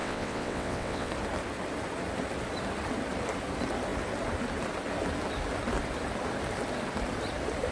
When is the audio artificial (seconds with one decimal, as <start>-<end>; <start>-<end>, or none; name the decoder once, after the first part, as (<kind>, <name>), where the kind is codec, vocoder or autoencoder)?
0.0-1.1 (vocoder, WaveNeXt)